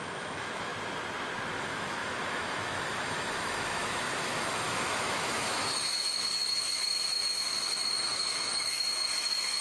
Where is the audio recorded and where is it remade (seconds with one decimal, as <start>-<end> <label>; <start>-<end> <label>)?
0.0-0.7 remade; 0.7-1.6 recorded; 1.6-9.6 remade